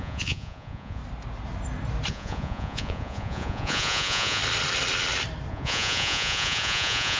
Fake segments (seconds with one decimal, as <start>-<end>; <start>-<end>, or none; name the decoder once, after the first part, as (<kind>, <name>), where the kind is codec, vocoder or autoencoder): 0.0-1.0 (vocoder, Vocos); 2.1-4.4; 5.5-7.2